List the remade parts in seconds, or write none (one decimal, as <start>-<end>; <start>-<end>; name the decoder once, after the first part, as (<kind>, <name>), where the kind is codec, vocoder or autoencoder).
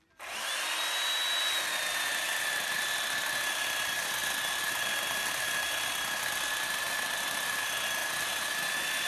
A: none